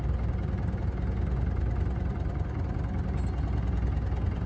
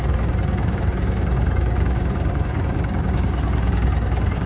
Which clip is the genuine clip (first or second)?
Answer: first